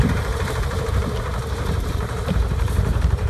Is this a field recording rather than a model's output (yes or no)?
no